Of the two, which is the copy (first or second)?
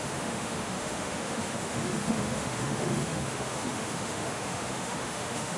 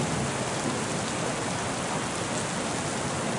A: first